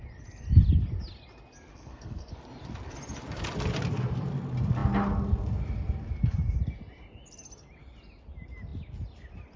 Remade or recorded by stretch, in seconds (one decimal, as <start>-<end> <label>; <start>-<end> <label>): 0.0-1.7 recorded; 1.7-2.3 remade; 2.3-9.6 recorded